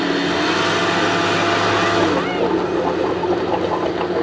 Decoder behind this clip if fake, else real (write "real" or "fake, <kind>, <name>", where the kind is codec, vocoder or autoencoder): real